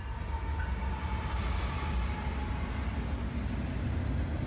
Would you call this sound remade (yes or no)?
no